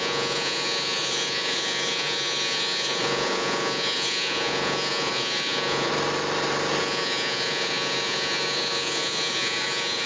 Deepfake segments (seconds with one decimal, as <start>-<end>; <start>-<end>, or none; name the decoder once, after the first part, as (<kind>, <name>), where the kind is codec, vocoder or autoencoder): 0.0-5.9 (vocoder, Vocos); 6.8-10.1